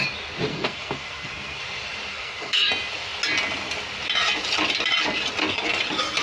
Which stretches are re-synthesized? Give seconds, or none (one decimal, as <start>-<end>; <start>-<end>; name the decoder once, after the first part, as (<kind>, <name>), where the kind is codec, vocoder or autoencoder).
0.5-1.6 (codec, SNAC); 2.1-2.7